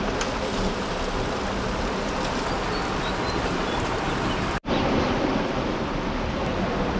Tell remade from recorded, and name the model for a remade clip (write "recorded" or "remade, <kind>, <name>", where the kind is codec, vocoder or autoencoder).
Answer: recorded